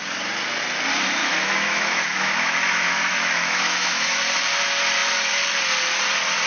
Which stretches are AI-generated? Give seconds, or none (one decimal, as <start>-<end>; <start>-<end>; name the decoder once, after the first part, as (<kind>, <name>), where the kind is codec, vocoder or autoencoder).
1.2-4.2 (autoencoder, DAC-VAE)